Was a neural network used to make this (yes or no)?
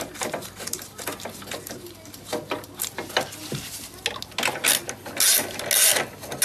no